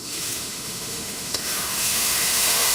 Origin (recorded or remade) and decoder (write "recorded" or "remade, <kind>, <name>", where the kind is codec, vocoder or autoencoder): remade, autoencoder, DAC-VAE